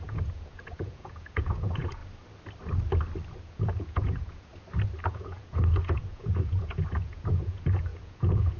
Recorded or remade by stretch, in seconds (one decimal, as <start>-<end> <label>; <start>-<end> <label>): 0.0-2.0 remade; 2.0-3.4 recorded; 3.4-4.5 remade; 4.5-5.0 recorded; 5.0-8.6 remade

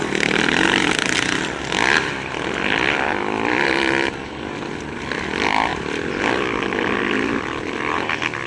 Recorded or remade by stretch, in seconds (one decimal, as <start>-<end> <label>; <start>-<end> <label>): 0.0-8.5 recorded

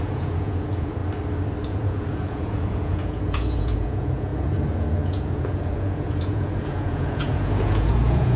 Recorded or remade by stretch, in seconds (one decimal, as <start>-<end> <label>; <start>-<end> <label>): 0.0-1.0 remade; 1.0-1.6 recorded; 1.6-8.4 remade

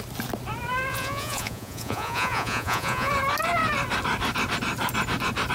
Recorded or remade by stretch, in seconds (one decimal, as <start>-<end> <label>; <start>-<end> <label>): 0.0-0.9 recorded; 0.9-3.1 remade; 3.1-5.5 recorded

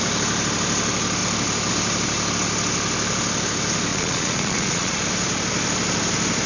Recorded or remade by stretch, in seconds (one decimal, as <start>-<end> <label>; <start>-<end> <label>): 0.0-3.9 recorded; 3.9-5.0 remade; 5.0-6.5 recorded

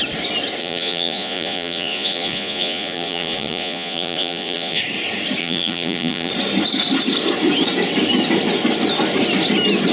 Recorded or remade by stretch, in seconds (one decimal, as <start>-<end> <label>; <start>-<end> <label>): 0.0-0.6 recorded; 0.6-4.8 remade; 4.8-5.4 recorded; 5.4-6.3 remade; 6.3-9.9 recorded

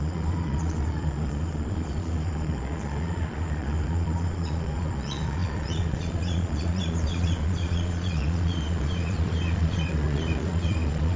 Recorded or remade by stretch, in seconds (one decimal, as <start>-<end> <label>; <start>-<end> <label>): 0.0-11.2 remade

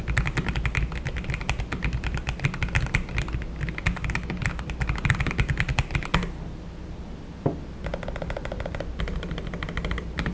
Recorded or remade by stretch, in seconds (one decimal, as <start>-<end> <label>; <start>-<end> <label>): 0.0-10.3 recorded